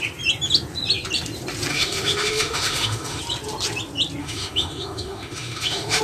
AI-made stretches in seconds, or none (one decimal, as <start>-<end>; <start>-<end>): 1.7-3.2; 4.2-6.0